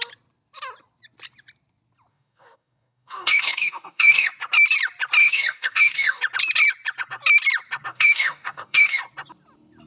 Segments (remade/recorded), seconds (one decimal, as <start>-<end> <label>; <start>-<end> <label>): 0.0-2.1 recorded; 2.1-4.3 remade; 4.3-5.2 recorded; 5.2-6.2 remade; 6.2-7.9 recorded; 7.9-9.0 remade; 9.0-9.9 recorded